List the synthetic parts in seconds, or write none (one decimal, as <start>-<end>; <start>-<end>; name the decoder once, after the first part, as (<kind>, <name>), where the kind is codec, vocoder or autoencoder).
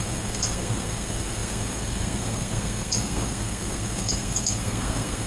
0.0-5.3 (codec, SNAC)